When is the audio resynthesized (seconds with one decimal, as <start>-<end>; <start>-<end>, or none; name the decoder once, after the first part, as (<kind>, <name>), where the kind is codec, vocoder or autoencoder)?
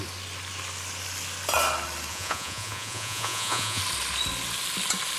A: 2.1-3.8 (vocoder, Vocos)